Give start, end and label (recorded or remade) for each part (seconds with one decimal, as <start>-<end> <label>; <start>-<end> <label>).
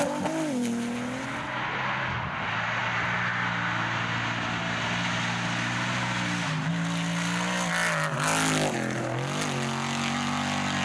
0.0-10.8 recorded